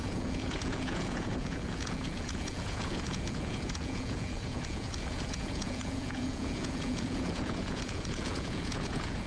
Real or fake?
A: fake